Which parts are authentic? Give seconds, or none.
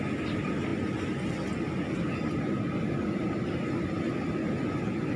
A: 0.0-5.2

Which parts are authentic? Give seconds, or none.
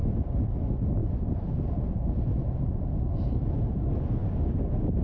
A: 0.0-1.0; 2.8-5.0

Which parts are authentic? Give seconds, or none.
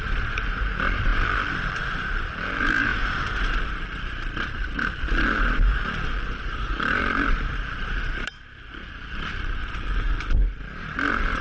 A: none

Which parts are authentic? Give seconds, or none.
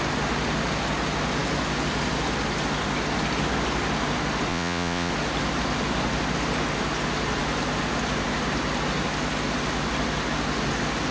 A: 0.0-4.5; 5.1-11.1